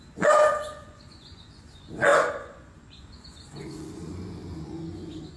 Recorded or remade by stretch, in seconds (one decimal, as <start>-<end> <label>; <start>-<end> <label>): 0.0-5.4 remade